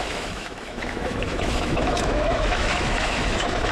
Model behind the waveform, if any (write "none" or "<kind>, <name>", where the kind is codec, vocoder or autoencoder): autoencoder, DAC-VAE